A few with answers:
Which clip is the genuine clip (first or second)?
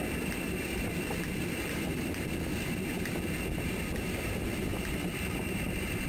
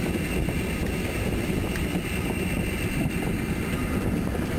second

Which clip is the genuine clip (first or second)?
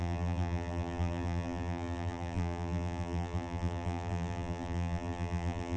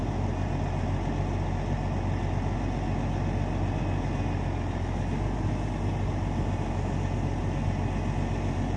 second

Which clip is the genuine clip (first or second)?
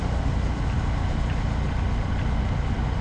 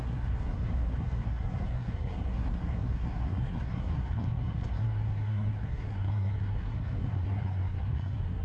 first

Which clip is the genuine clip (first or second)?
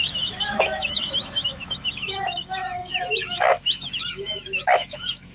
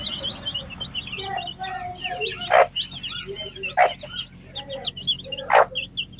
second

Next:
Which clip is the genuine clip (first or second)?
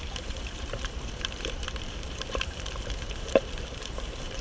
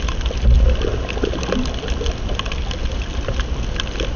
second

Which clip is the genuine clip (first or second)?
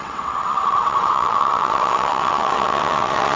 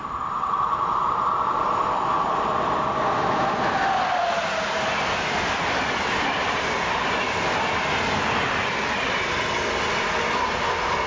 second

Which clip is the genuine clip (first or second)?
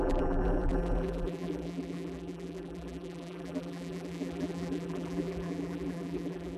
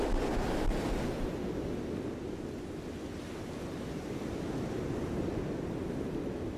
second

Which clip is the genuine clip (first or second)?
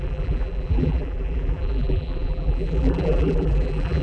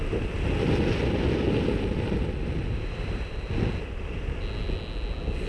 second